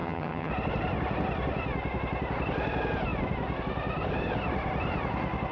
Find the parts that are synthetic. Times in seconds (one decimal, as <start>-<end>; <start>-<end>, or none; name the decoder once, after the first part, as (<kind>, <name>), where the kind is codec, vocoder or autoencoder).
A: 0.0-0.5 (vocoder, HiFi-GAN)

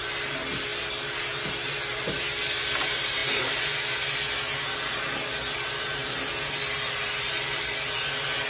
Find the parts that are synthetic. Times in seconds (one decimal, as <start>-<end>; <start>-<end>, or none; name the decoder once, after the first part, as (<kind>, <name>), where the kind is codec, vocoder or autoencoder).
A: none